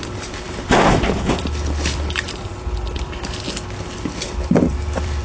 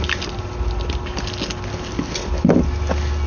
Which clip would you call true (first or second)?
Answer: second